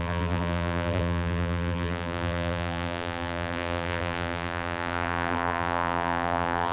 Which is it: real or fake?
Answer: fake